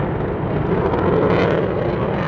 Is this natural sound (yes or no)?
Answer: yes